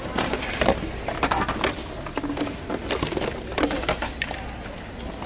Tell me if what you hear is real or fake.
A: real